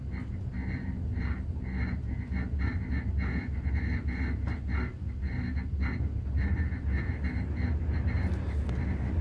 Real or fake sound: real